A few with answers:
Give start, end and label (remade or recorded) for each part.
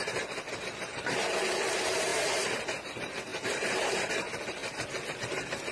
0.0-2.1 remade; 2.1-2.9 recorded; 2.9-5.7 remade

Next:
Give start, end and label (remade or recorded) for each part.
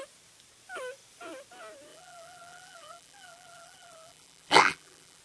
0.0-1.9 recorded; 1.9-5.2 remade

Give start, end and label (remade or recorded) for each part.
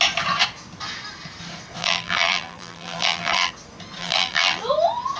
0.0-1.8 recorded; 1.8-3.5 remade; 3.5-4.0 recorded; 4.0-4.6 remade; 4.6-5.2 recorded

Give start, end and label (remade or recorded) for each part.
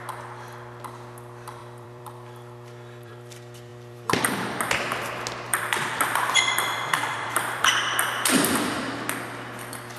0.0-1.6 recorded; 1.6-3.1 remade; 3.1-3.7 recorded; 3.7-4.6 remade; 4.6-5.5 recorded; 5.5-8.8 remade; 8.8-10.0 recorded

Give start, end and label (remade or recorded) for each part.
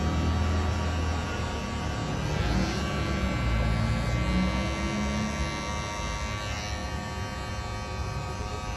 0.0-8.0 recorded; 8.0-8.8 remade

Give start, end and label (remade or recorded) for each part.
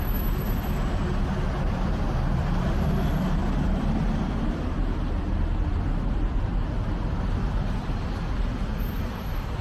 0.0-9.6 recorded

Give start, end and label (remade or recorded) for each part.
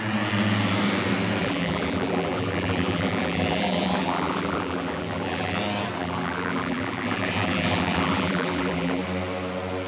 0.0-1.4 recorded; 1.4-5.6 remade; 5.6-6.0 recorded; 6.0-9.0 remade; 9.0-9.9 recorded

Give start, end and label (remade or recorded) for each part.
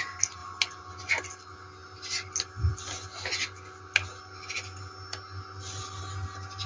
0.0-6.7 recorded